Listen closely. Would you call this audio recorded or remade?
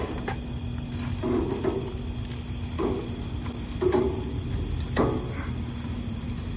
recorded